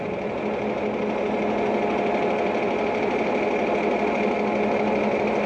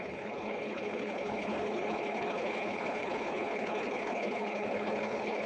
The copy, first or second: second